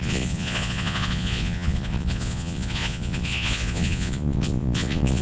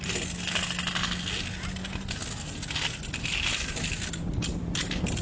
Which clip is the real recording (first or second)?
second